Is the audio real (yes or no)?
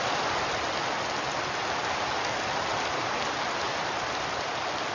yes